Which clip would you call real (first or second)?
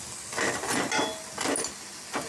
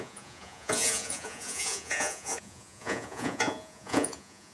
first